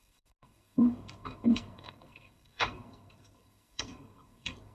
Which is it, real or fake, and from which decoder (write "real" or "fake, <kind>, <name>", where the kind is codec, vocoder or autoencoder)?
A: fake, codec, SNAC